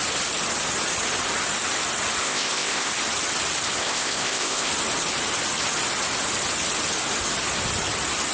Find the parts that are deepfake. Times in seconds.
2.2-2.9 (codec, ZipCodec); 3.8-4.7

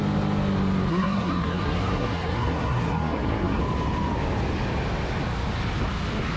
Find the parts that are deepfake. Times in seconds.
0.9-3.6 (codec, SNAC)

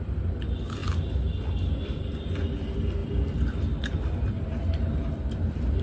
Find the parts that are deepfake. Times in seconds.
3.0-5.8 (vocoder, BigVGAN v2)

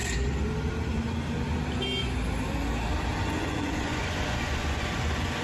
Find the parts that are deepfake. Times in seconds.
3.2-5.4 (vocoder, Vocos)

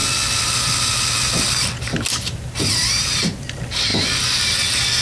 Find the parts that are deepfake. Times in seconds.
none